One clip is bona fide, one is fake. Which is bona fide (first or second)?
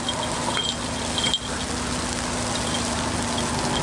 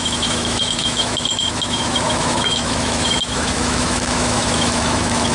first